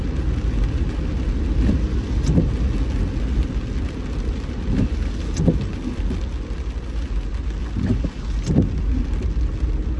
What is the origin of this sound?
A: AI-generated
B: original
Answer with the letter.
B